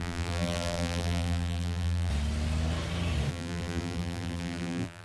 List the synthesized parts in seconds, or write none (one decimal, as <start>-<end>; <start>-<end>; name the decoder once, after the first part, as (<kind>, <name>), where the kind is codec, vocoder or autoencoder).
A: 0.0-2.1 (vocoder, BigVGAN v2); 3.3-5.0